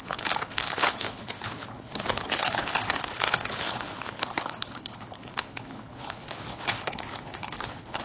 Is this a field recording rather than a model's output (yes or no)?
no